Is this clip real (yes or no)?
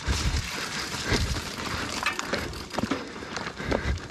no